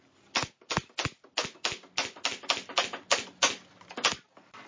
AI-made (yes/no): no